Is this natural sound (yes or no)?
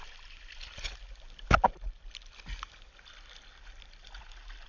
yes